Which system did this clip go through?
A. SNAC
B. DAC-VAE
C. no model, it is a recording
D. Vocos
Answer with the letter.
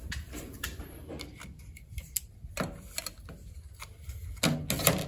C